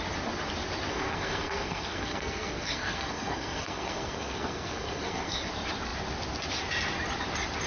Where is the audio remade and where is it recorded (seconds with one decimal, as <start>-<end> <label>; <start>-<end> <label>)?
0.0-0.9 recorded; 0.9-5.5 remade; 5.5-7.7 recorded